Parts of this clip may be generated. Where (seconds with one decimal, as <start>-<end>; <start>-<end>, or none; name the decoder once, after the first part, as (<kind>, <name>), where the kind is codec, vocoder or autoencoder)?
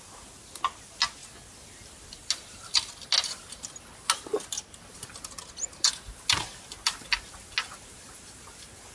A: none